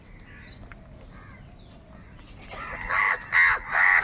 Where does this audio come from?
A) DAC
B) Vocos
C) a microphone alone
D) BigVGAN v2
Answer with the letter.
C